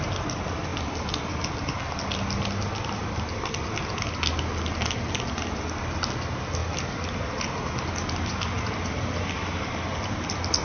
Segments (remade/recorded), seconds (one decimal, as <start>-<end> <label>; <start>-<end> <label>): 0.0-10.6 recorded